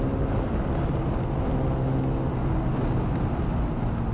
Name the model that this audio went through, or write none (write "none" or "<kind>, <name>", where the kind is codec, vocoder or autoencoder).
none